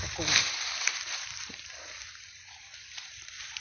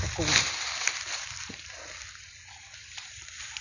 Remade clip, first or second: first